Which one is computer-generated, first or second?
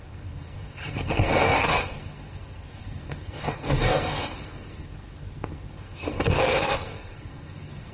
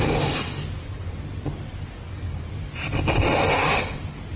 first